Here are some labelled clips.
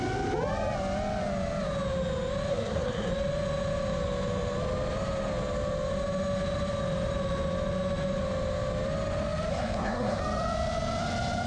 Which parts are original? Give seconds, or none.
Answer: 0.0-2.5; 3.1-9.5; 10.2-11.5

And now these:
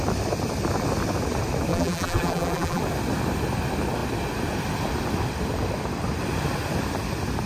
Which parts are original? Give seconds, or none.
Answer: 0.0-1.7; 2.8-7.5

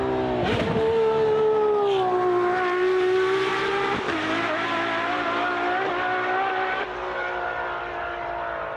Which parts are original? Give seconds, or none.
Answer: 0.0-3.5; 4.0-8.8

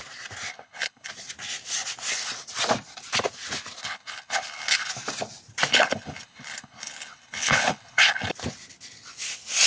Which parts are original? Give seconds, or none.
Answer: 0.0-0.5; 1.1-3.8; 4.9-5.7; 8.3-9.7

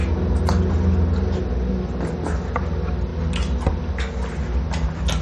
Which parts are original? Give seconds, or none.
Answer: 0.0-5.2